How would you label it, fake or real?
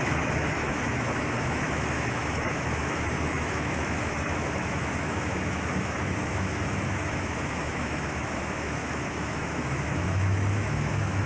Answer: fake